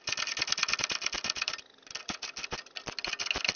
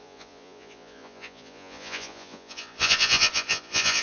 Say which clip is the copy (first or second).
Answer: second